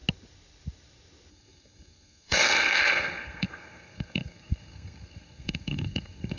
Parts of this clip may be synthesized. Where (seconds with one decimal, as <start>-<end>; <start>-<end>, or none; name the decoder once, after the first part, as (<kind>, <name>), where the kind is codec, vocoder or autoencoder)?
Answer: 1.3-6.4 (codec, SNAC)